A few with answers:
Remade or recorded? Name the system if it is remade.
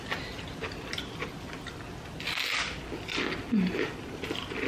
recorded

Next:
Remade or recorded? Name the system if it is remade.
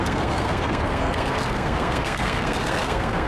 remade, codec, SNAC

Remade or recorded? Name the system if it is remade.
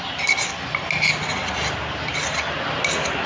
recorded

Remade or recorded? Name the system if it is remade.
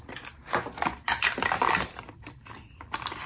recorded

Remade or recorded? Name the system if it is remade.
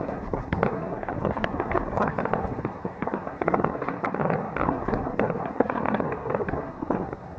remade, codec, SNAC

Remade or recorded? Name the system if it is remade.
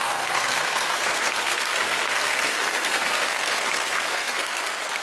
remade, codec, SNAC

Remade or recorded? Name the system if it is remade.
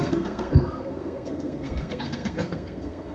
remade, codec, SNAC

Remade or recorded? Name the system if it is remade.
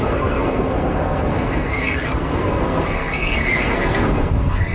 remade, codec, SNAC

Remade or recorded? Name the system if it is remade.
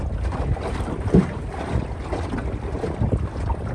recorded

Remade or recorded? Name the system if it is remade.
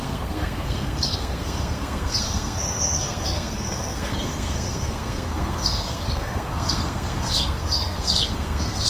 remade, codec, SNAC